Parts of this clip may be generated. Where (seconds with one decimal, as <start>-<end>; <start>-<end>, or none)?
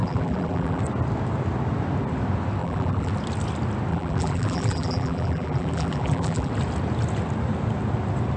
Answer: 0.0-0.8; 2.6-3.1; 3.9-6.5